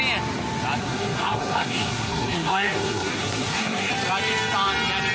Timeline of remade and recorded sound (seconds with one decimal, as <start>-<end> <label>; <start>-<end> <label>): 0.0-0.8 recorded; 0.8-3.9 remade; 3.9-5.1 recorded